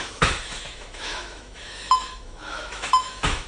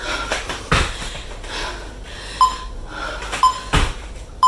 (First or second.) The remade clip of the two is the first